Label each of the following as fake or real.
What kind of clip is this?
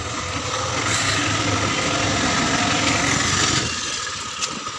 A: real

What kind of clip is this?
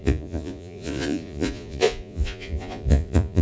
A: fake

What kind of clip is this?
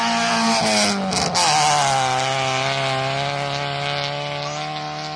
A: real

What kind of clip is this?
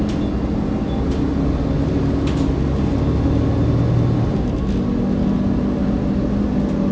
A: real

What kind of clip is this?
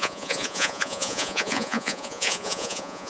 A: fake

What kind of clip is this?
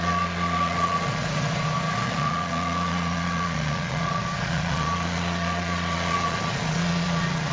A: fake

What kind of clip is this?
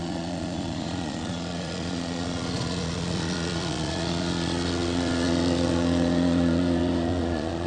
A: fake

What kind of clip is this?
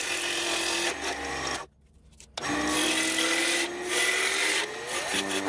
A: real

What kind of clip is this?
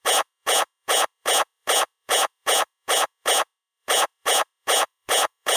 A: fake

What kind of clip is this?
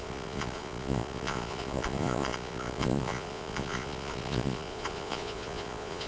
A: fake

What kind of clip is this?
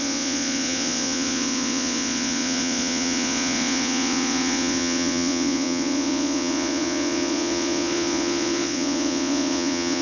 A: fake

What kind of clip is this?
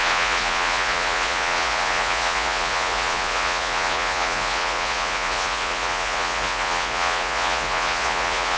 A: fake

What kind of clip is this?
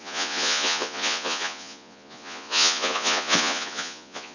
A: fake